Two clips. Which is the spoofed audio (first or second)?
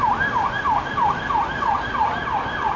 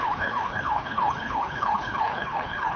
second